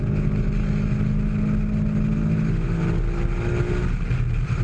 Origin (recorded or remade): recorded